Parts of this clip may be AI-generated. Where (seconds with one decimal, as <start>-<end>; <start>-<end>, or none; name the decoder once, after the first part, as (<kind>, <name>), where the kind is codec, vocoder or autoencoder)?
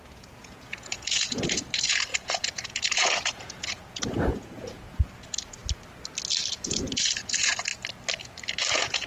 0.0-5.6 (vocoder, Vocos); 6.5-7.7; 8.7-9.1